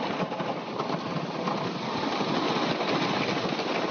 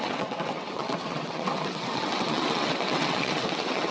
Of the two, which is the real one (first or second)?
first